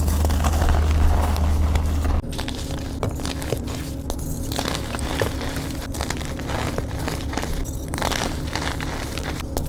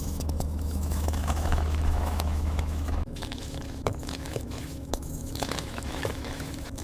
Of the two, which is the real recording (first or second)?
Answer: first